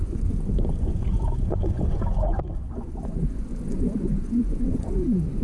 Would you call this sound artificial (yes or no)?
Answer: yes